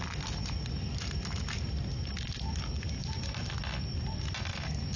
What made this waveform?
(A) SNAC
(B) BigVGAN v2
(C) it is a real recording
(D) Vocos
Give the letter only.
C